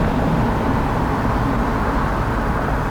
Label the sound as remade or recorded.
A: recorded